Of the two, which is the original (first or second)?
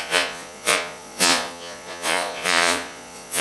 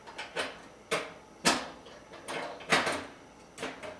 second